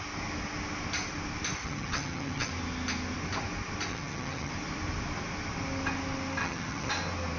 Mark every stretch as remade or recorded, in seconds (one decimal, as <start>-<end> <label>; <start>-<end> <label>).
0.0-1.6 recorded; 1.6-2.5 remade; 2.5-3.9 recorded; 3.9-4.5 remade; 4.5-6.4 recorded; 6.4-6.9 remade; 6.9-7.4 recorded